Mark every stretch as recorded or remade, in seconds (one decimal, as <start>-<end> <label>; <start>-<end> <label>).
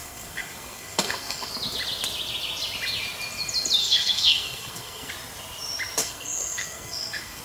0.0-1.5 remade; 1.5-3.8 recorded; 3.8-5.1 remade; 5.1-6.0 recorded; 6.0-7.4 remade